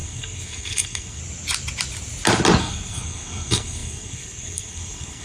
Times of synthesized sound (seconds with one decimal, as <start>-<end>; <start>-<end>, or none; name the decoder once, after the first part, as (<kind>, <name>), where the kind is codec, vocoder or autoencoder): 0.0-1.2 (codec, SNAC); 2.6-5.2